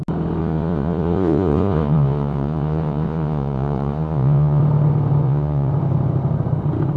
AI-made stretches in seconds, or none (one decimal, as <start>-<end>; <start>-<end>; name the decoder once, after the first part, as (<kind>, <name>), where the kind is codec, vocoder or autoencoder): 0.4-4.6 (vocoder, Vocos); 5.2-5.7